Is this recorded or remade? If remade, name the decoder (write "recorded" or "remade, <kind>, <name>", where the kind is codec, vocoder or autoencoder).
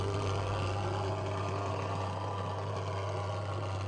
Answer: recorded